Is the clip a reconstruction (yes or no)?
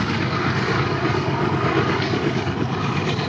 yes